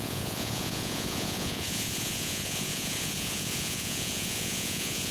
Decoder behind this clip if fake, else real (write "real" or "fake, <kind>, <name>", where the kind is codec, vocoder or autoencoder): fake, vocoder, Vocos